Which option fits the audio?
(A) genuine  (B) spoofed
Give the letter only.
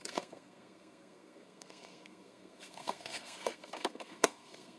B